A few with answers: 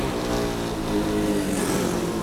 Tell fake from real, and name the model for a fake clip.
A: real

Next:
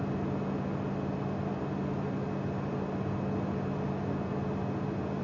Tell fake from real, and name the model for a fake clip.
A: real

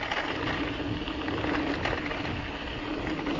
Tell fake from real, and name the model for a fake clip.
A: real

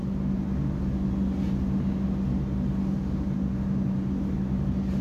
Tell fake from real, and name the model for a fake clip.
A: real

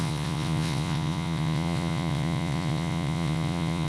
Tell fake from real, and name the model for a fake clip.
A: fake, vocoder, Vocos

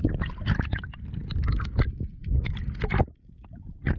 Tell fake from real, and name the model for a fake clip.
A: real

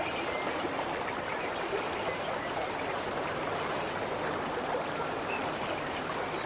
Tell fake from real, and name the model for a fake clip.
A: real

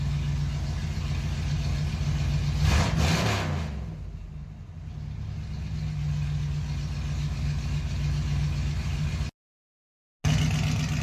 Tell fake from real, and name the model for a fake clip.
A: real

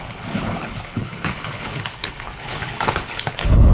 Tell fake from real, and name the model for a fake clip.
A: fake, codec, HILCodec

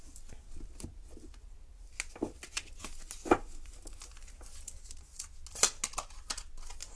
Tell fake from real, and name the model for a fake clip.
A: real